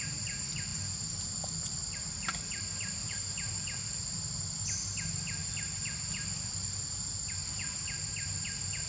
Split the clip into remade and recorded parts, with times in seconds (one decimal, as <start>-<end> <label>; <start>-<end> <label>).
0.0-8.9 recorded